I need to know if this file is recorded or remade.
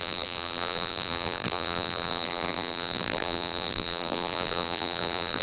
remade